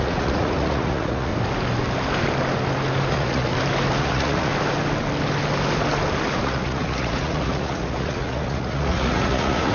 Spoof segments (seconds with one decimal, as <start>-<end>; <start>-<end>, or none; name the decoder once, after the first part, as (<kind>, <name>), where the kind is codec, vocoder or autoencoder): 0.0-1.3 (vocoder, Vocos); 3.1-3.5; 4.0-4.5; 6.4-9.7